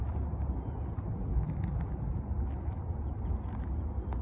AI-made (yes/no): no